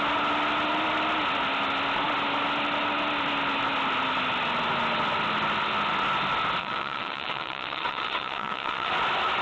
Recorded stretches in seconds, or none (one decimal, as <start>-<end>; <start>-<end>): 0.0-6.6; 8.9-9.4